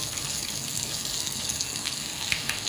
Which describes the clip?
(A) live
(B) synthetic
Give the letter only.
B